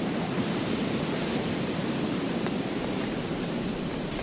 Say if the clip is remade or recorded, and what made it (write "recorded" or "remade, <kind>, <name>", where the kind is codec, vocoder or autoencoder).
remade, vocoder, BigVGAN v2